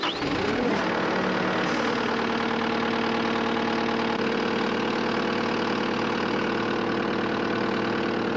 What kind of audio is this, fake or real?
real